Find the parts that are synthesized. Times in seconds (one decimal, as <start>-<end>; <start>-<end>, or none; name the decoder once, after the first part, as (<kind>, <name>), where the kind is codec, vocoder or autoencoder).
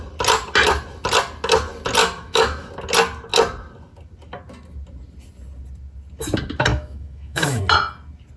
2.0-2.7 (autoencoder, DAC-VAE); 6.7-7.6